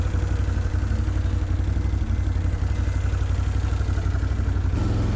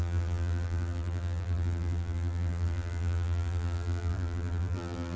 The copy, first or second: second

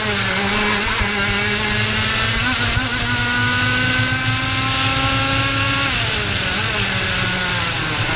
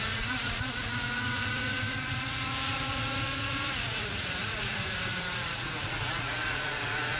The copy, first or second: second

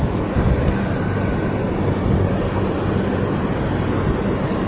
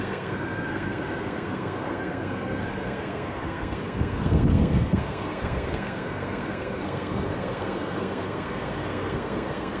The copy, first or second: second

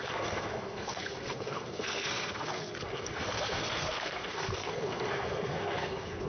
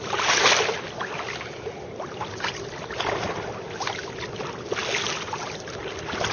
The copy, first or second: first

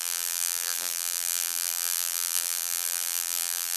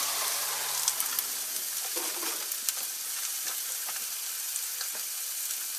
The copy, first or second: first